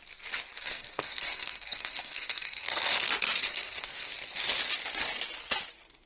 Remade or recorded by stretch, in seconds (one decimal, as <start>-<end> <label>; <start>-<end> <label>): 0.0-0.6 recorded; 0.6-3.1 remade; 3.1-3.5 recorded; 3.5-4.1 remade; 4.1-6.1 recorded

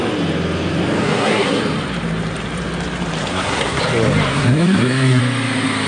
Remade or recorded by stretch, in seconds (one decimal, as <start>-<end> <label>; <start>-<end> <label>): 0.0-1.0 recorded; 1.0-1.6 remade; 1.6-3.3 recorded; 3.3-3.8 remade; 3.8-4.3 recorded; 4.3-5.2 remade; 5.2-5.9 recorded

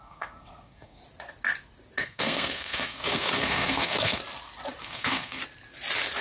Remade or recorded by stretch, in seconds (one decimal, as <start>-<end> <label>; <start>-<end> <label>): 0.0-1.0 remade; 1.0-2.0 recorded; 2.0-4.2 remade; 4.2-4.8 recorded; 4.8-5.4 remade; 5.4-6.2 recorded

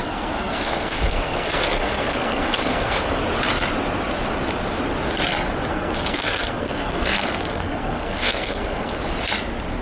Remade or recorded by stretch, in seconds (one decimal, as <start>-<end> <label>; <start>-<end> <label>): 0.0-3.2 remade; 3.2-5.7 recorded; 5.7-9.0 remade; 9.0-9.8 recorded

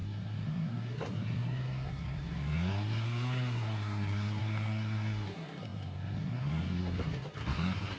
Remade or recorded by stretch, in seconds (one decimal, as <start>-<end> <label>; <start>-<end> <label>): 0.0-8.0 remade

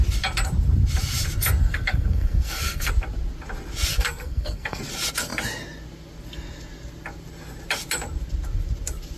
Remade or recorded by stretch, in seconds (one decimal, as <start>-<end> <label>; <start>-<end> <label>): 0.0-1.6 recorded; 1.6-2.9 remade; 2.9-3.9 recorded; 3.9-4.8 remade; 4.8-9.2 recorded

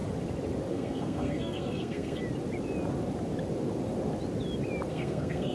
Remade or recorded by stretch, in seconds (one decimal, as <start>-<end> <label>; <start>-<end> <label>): 0.0-0.7 recorded; 0.7-2.2 remade; 2.2-4.9 recorded; 4.9-5.5 remade

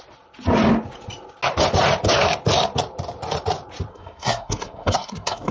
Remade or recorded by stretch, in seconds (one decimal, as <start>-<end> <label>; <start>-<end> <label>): 0.0-3.9 recorded; 3.9-5.5 remade